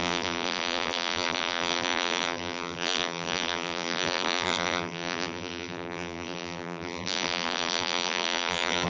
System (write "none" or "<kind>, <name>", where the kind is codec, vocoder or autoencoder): vocoder, BigVGAN v2